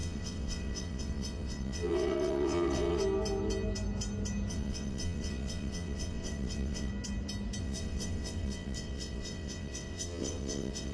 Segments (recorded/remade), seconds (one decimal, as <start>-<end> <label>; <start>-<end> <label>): 0.0-3.0 remade; 3.0-4.5 recorded; 4.5-6.9 remade; 6.9-7.6 recorded; 7.6-10.9 remade